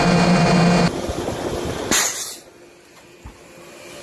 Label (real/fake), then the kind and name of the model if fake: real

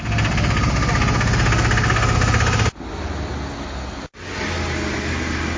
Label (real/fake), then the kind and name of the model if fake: real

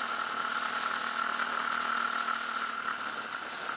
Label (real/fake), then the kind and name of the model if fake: real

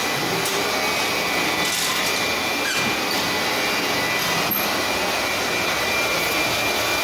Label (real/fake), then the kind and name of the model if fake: real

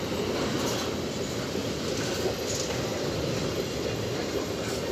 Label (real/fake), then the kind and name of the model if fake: real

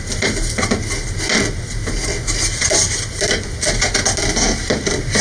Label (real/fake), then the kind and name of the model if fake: real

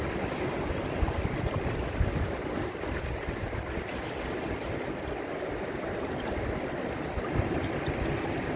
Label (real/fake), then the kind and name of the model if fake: real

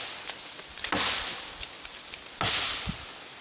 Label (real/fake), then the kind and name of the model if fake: real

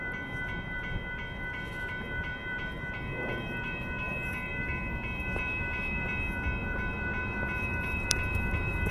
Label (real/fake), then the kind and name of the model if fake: fake, vocoder, BigVGAN v2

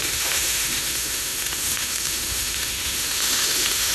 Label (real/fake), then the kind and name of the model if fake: fake, autoencoder, DAC-VAE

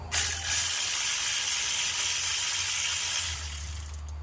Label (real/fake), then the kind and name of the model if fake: real